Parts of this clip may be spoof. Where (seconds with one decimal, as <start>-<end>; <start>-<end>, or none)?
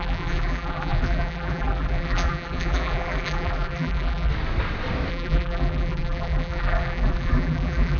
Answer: 0.0-4.3; 5.1-8.0